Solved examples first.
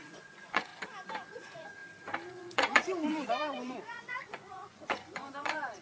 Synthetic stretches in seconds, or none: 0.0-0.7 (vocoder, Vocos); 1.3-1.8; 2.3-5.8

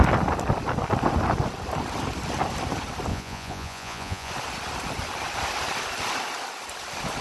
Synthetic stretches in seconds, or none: 3.1-4.3 (vocoder, Vocos)

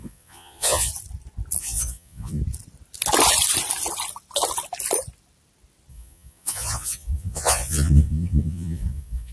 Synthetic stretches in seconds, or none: 0.0-0.9 (vocoder, Vocos); 1.6-2.4; 5.9-9.3

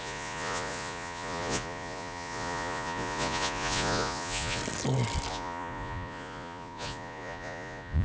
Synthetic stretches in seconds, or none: 0.0-4.6 (vocoder, Vocos); 5.3-8.0